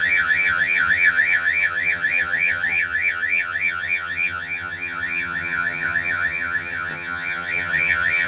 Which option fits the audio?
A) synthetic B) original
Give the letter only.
A